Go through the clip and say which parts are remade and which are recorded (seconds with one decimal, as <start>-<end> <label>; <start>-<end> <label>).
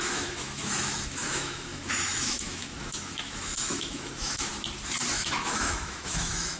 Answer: 0.0-4.5 remade; 4.5-5.1 recorded; 5.1-6.6 remade